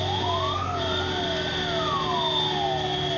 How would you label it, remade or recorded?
recorded